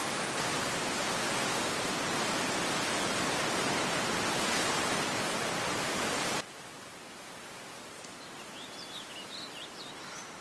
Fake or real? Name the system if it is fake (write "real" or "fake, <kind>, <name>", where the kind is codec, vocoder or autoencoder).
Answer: real